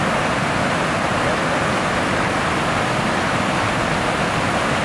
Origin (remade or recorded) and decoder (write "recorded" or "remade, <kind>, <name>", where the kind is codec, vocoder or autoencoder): recorded